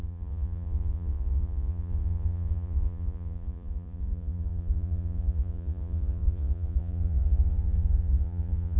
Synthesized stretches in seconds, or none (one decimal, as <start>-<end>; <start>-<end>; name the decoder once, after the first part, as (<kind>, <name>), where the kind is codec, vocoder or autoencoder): 0.0-8.8 (vocoder, Vocos)